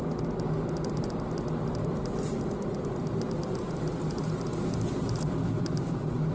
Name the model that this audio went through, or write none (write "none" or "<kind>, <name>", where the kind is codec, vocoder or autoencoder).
none